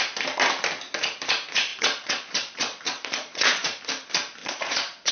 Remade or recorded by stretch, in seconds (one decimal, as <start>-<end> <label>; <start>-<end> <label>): 0.0-1.7 recorded; 1.7-3.8 remade; 3.8-4.4 recorded; 4.4-5.1 remade